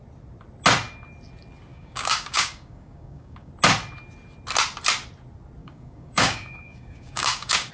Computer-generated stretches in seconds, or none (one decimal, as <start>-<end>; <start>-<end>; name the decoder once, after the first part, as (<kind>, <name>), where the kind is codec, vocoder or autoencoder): 1.7-3.5 (codec, DAC); 5.6-7.7